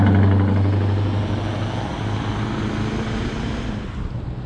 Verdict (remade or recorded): recorded